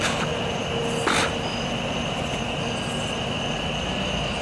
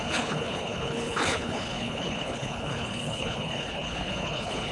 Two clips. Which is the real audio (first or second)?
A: first